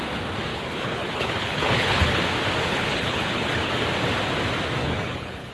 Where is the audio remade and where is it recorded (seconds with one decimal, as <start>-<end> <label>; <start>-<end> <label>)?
0.0-0.5 recorded; 0.5-2.2 remade; 2.2-2.6 recorded; 2.6-3.7 remade; 3.7-4.8 recorded; 4.8-5.5 remade